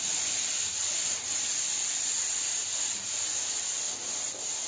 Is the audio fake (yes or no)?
no